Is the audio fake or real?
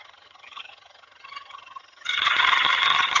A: fake